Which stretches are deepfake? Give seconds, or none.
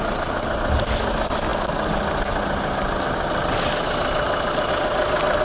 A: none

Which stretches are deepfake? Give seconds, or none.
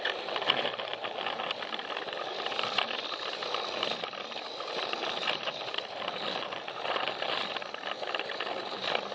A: 0.0-0.9 (vocoder, BigVGAN v2); 1.5-9.1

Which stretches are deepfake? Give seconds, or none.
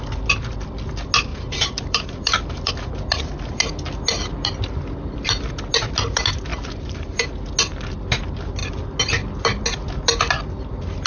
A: 1.3-2.7 (vocoder, BigVGAN v2); 6.5-7.3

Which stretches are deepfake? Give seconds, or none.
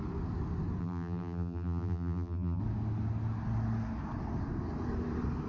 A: 0.8-2.6 (vocoder, BigVGAN v2)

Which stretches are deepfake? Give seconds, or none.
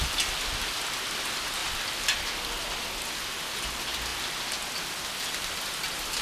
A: none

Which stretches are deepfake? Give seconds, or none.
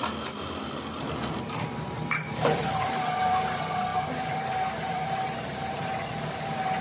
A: 2.2-3.3 (vocoder, BigVGAN v2); 3.9-6.1